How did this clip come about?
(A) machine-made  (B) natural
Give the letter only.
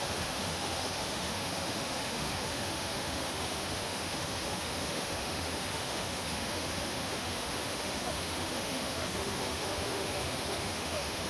A